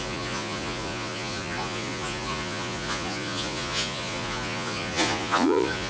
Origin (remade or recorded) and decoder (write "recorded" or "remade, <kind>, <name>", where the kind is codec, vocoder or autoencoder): remade, vocoder, Vocos